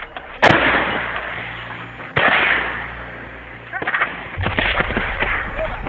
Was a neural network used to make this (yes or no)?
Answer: no